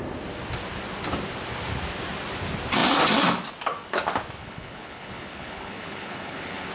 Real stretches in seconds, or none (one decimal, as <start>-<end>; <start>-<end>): 0.0-4.4